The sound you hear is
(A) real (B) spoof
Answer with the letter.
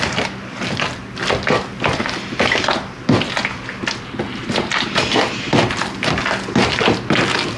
A